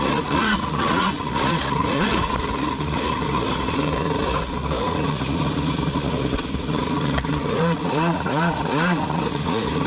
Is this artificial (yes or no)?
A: yes